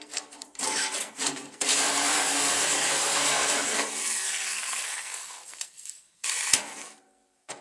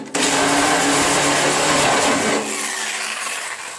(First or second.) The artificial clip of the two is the first